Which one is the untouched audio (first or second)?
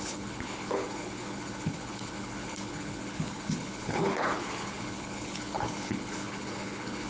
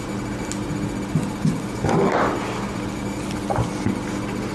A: second